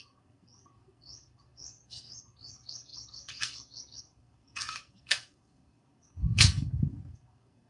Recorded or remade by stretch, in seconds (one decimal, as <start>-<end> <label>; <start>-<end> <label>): 0.0-7.7 remade